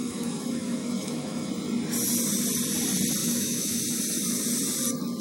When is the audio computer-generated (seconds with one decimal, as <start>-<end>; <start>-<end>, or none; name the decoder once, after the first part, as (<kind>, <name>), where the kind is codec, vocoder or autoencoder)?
0.0-1.5 (autoencoder, DAC-VAE); 3.2-3.8